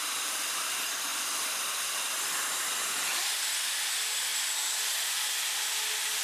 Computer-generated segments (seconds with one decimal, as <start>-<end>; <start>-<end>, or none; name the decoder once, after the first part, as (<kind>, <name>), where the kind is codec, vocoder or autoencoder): none